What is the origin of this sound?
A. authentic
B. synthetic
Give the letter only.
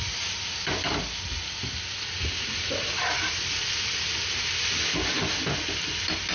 A